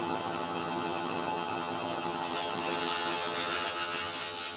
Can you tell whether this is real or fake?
fake